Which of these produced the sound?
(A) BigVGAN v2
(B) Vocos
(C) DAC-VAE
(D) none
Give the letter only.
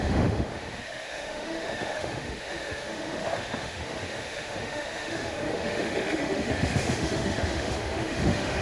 C